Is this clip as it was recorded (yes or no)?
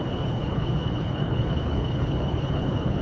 no